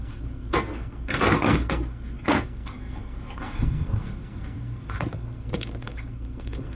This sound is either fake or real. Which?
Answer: fake